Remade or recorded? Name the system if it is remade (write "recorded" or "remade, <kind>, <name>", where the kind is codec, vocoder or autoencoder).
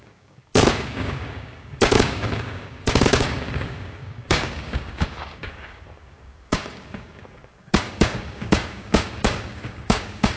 remade, codec, DAC